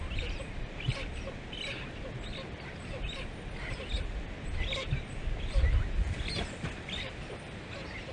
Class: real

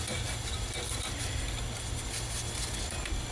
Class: real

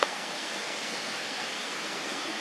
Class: fake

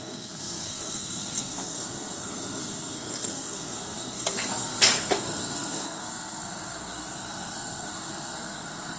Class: fake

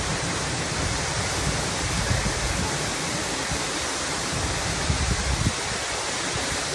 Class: real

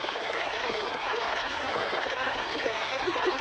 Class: fake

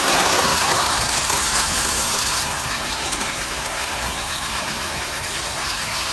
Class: fake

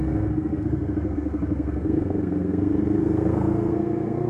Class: fake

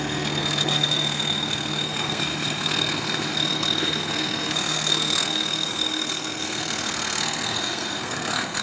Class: fake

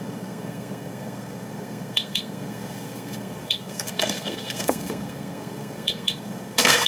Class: fake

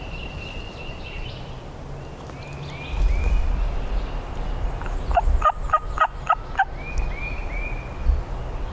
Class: real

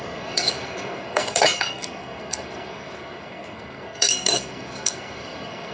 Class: fake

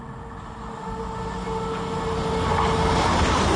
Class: real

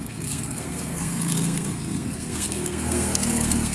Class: fake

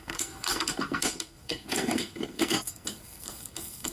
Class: fake